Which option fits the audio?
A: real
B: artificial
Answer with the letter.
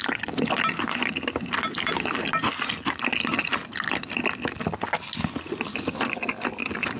A